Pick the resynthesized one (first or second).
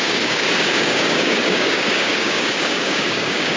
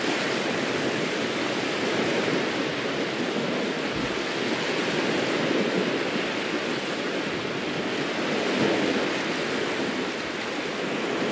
first